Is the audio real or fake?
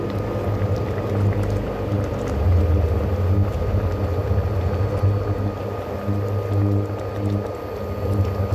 real